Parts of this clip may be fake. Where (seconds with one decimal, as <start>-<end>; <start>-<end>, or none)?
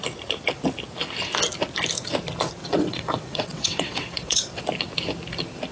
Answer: 2.6-4.6